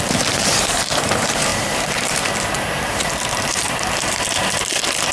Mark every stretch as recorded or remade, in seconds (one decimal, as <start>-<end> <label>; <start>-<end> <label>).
0.0-5.1 remade